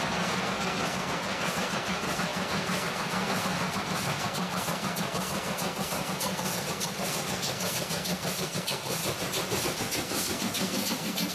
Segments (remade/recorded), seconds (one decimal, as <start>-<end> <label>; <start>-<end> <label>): 0.0-9.0 remade; 9.0-9.6 recorded; 9.6-11.3 remade